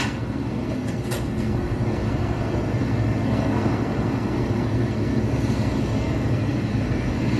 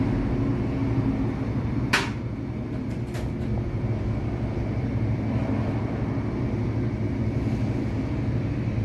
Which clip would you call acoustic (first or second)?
second